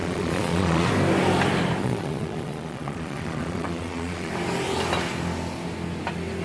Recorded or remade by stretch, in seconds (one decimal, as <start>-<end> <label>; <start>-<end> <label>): 0.0-0.9 remade; 0.9-1.8 recorded; 1.8-4.3 remade; 4.3-6.4 recorded